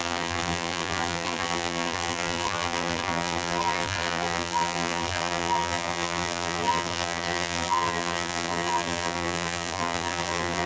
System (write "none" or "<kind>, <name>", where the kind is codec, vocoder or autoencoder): vocoder, BigVGAN v2